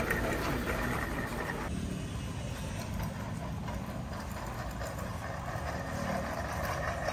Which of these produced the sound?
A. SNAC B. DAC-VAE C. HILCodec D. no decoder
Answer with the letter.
D